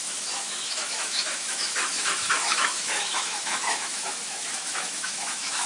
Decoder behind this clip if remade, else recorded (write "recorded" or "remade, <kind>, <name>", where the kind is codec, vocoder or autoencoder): remade, autoencoder, DAC-VAE